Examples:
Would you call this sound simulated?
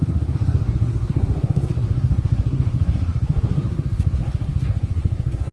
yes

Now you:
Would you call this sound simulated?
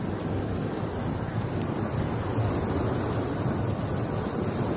no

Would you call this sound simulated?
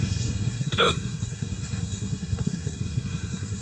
yes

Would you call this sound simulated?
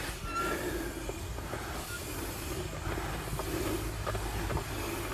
no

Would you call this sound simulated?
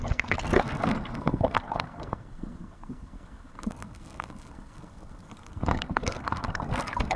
yes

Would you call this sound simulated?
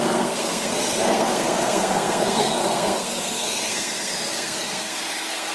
yes